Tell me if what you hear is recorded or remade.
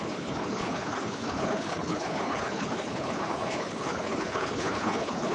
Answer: remade